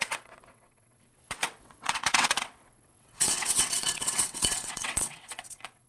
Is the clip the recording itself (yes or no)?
no